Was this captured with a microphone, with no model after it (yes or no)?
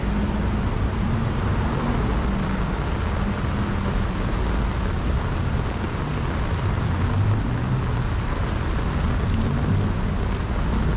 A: yes